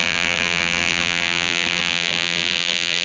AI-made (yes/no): yes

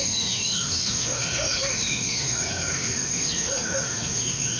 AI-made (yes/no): yes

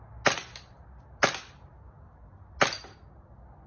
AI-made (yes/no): no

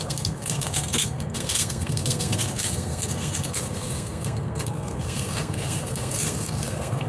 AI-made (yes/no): yes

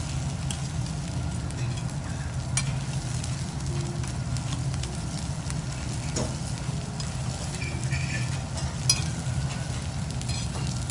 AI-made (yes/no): no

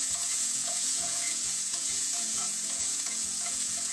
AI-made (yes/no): yes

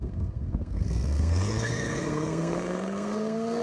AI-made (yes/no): yes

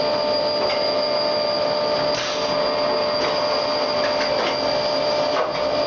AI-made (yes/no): no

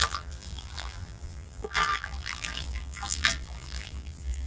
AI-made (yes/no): yes